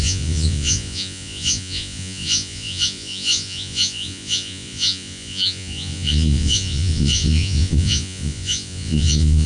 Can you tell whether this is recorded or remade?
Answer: remade